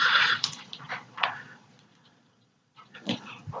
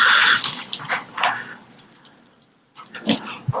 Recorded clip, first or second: second